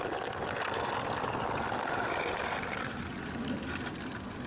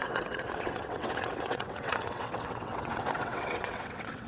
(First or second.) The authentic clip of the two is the first